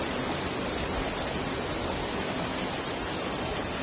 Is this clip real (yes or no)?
yes